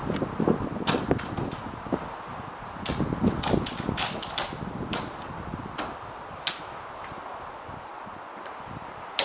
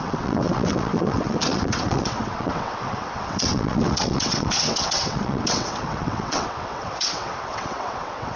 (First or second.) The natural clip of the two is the first